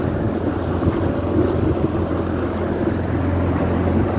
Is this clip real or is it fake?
real